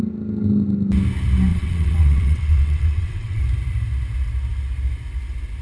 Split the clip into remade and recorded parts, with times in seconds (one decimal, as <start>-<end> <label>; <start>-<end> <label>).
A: 0.0-1.5 recorded; 1.5-3.4 remade; 3.4-5.6 recorded